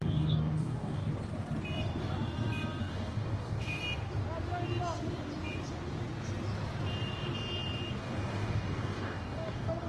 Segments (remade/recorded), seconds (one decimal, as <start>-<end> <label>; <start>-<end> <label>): 0.0-1.0 remade; 1.0-2.8 recorded; 2.8-3.8 remade; 3.8-8.0 recorded; 8.0-9.9 remade

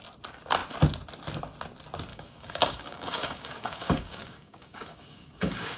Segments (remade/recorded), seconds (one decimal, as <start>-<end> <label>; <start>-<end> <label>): 0.0-2.1 recorded; 2.1-5.8 remade

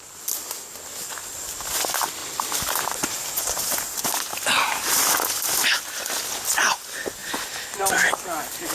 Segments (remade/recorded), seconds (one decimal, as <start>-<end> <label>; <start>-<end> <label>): 0.0-7.2 recorded; 7.2-8.1 remade; 8.1-8.7 recorded

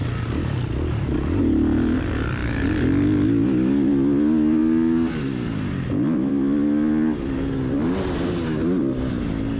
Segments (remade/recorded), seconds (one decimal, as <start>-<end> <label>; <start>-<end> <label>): 0.0-9.6 recorded